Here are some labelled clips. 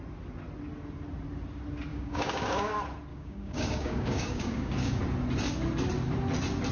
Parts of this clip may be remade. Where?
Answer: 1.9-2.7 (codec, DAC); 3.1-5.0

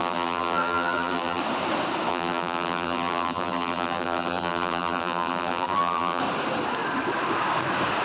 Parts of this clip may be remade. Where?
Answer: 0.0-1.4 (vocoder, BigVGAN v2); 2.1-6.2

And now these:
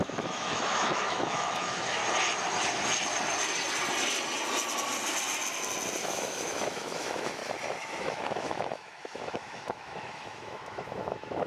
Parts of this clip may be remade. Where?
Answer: 0.0-2.0 (autoencoder, DAC-VAE); 6.0-7.4; 8.0-11.5